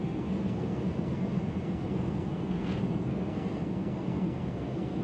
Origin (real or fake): fake